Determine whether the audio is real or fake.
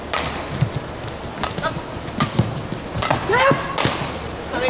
real